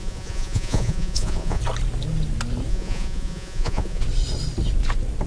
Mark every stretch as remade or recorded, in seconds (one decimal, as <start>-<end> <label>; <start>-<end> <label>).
0.0-1.6 remade; 1.6-2.7 recorded; 2.7-4.0 remade; 4.0-5.3 recorded